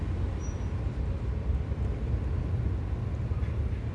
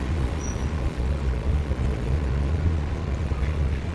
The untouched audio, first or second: first